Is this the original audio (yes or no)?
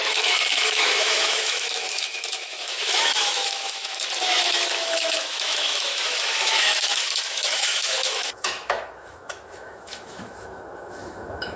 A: no